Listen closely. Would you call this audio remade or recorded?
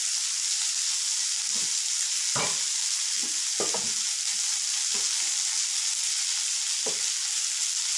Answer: recorded